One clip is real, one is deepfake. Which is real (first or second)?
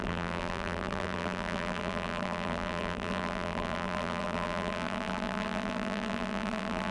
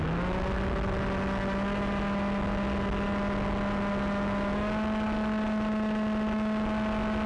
second